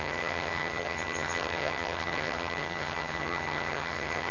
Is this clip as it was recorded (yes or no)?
no